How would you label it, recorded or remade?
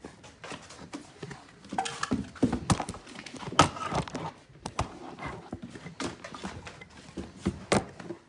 recorded